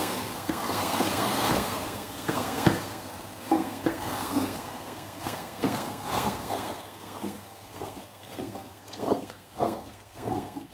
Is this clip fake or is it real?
fake